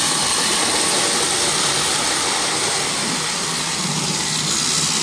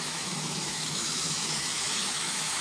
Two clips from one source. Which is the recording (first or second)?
first